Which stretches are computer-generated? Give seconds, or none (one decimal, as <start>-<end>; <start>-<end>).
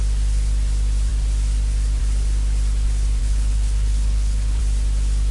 3.2-4.6